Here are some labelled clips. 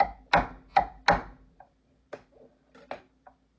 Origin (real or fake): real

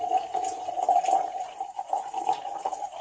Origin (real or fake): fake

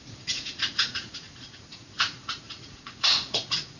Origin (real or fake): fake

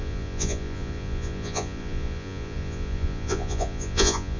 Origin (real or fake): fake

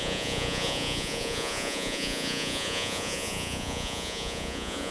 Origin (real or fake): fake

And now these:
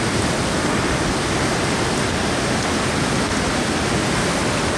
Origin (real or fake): real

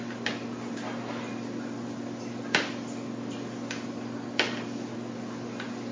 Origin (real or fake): real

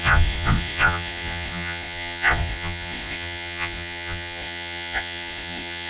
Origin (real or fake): fake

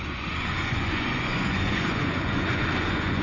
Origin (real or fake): fake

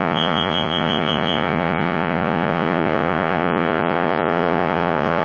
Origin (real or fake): fake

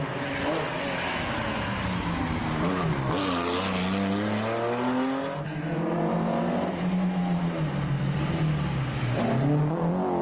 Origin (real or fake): real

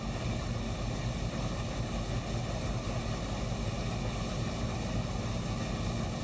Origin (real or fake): real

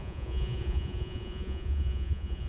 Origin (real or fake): fake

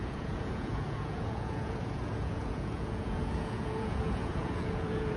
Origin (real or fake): fake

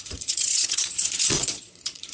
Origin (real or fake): fake